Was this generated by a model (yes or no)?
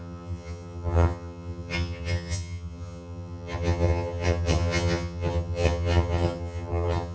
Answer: yes